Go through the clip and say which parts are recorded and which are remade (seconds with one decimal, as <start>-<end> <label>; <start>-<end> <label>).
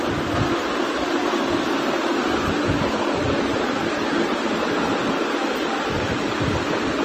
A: 0.0-3.5 recorded; 3.5-6.3 remade; 6.3-7.0 recorded